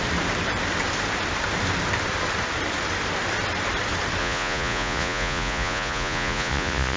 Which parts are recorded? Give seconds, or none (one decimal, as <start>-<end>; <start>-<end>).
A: 0.0-4.2